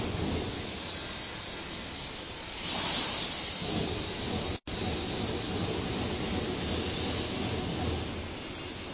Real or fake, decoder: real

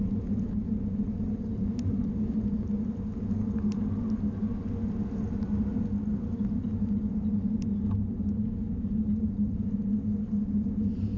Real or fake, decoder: real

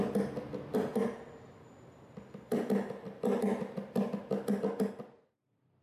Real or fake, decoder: real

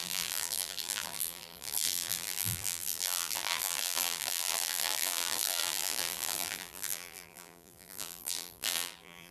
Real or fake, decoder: fake, vocoder, BigVGAN v2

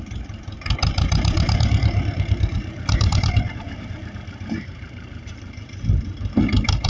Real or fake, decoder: fake, vocoder, BigVGAN v2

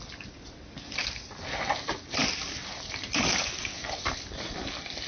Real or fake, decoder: real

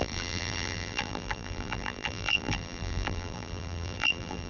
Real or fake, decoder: fake, vocoder, BigVGAN v2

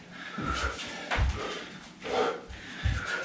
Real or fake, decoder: real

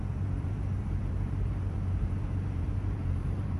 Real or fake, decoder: fake, vocoder, BigVGAN v2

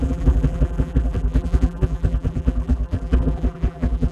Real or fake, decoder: fake, vocoder, BigVGAN v2